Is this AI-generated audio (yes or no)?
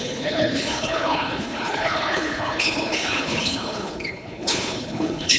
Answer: yes